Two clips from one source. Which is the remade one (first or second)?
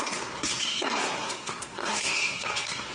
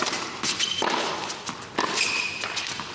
first